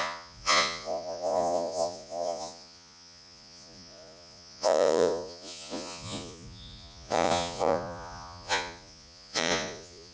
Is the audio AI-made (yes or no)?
yes